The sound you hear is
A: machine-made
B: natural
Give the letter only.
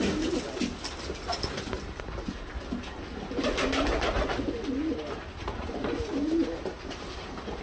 B